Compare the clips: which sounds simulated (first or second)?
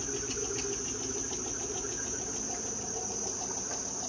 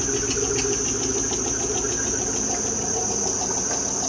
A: first